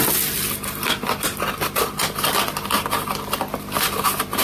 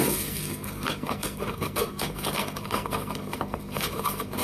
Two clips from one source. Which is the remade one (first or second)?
second